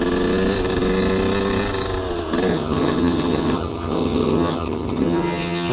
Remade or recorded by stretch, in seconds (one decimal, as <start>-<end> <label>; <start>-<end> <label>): 0.0-2.5 recorded; 2.5-5.7 remade